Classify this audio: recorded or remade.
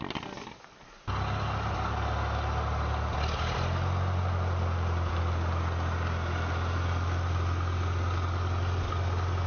recorded